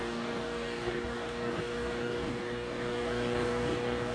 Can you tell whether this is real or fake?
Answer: fake